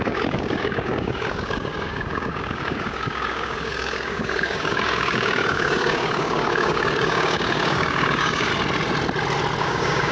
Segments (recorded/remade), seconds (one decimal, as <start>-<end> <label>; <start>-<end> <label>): 0.0-8.5 remade; 8.5-9.6 recorded; 9.6-10.1 remade